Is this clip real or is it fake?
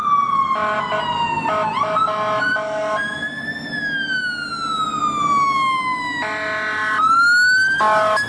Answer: real